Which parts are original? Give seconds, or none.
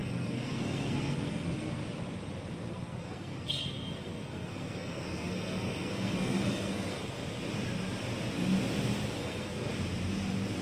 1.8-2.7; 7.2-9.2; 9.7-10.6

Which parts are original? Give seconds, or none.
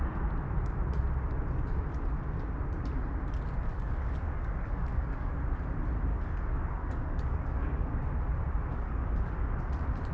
0.0-3.6; 5.3-6.1; 8.0-8.7; 9.5-10.1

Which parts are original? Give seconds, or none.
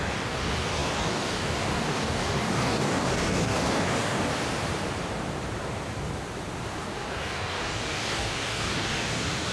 4.3-6.8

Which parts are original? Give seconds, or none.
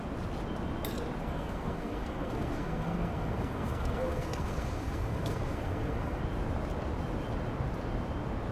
0.0-1.2; 6.2-8.5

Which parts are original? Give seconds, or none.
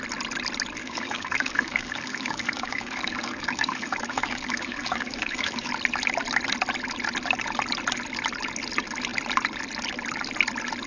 0.0-0.8; 5.7-10.9